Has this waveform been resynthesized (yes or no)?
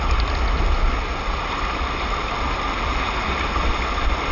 no